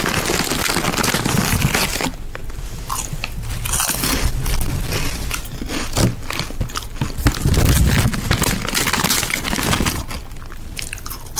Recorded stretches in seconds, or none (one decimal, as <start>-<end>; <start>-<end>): 0.0-11.4